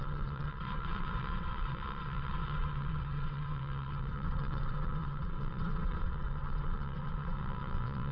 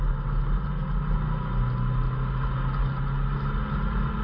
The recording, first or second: second